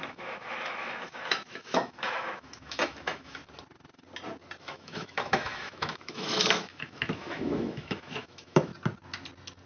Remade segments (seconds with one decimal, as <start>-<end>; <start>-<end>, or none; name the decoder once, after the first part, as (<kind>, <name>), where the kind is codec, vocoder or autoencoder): 0.0-3.4 (autoencoder, DAC-VAE); 4.6-8.7